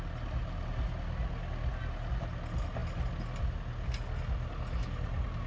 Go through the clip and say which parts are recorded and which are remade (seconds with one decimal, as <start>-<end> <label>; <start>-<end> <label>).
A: 0.0-5.5 recorded